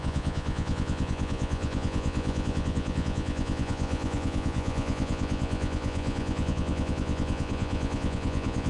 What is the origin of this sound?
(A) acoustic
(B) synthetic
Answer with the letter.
B